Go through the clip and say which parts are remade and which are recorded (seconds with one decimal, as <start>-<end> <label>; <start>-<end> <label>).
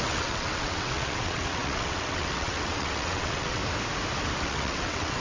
0.0-3.6 remade; 3.6-4.4 recorded; 4.4-5.2 remade